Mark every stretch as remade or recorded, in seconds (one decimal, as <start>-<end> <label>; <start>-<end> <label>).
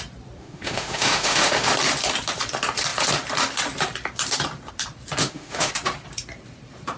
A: 0.0-0.4 recorded; 0.4-1.7 remade; 1.7-5.2 recorded; 5.2-5.7 remade; 5.7-7.0 recorded